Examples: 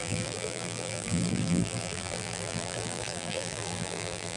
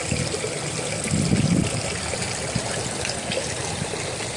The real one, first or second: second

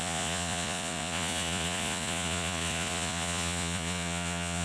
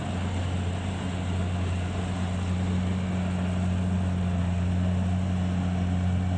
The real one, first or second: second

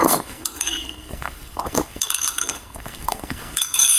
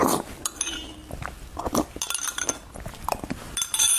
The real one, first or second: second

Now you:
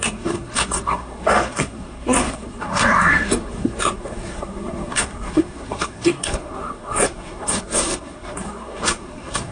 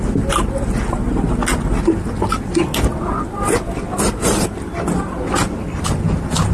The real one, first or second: second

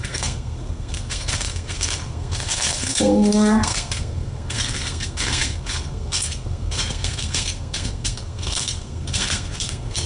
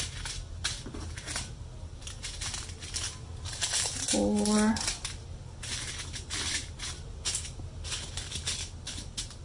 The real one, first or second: second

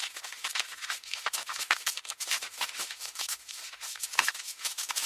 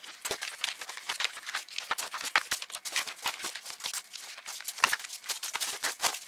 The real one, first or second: second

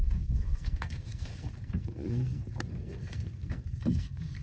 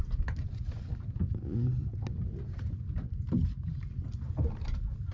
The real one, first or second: second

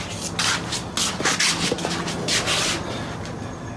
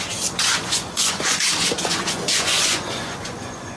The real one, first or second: first